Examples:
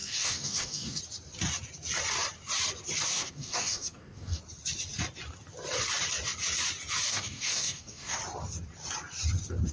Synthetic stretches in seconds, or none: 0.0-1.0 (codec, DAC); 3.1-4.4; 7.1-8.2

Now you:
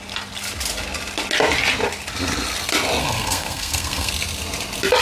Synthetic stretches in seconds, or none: 3.0-4.1 (codec, SNAC)